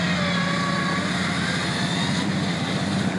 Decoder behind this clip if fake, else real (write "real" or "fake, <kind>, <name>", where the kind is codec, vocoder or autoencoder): real